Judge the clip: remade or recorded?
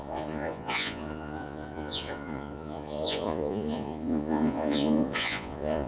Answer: remade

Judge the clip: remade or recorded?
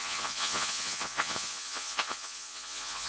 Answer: remade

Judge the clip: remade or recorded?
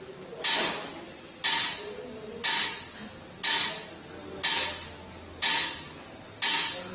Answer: recorded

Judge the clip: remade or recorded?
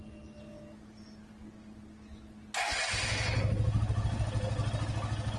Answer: recorded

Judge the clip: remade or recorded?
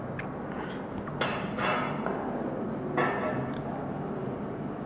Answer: recorded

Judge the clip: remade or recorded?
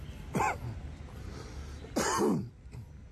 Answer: recorded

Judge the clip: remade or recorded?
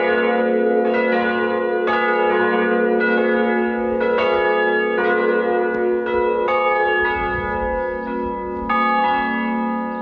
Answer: recorded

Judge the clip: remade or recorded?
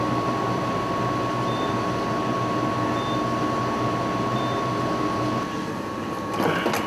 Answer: recorded